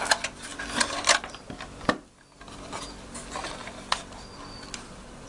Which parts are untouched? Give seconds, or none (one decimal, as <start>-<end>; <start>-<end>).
0.0-5.3